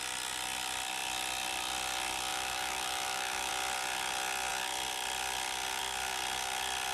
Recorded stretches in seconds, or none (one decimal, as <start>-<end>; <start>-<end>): 0.0-2.3; 3.5-6.9